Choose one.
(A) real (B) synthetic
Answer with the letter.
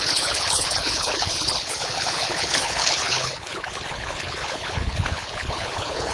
B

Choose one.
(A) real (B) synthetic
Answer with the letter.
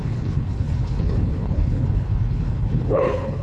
B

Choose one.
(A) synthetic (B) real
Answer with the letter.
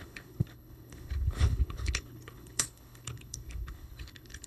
A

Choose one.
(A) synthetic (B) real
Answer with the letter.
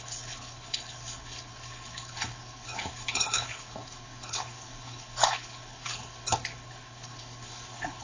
A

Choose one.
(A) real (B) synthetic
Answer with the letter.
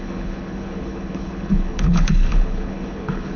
B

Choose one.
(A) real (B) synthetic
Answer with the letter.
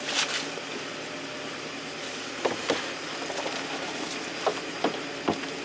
A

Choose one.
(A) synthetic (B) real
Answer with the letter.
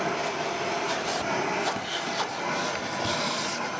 B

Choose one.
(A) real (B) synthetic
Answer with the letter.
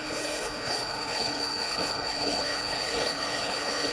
B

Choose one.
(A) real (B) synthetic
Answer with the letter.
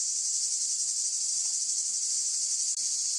A